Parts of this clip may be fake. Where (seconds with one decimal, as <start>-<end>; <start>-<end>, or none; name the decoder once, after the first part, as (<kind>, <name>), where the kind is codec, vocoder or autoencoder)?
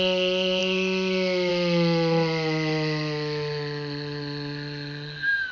none